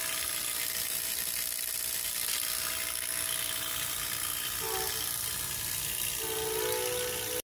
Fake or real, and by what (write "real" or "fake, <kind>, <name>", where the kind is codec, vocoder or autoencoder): real